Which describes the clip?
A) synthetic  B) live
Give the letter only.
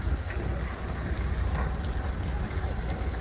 B